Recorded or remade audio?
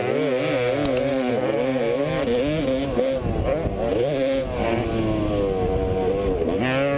recorded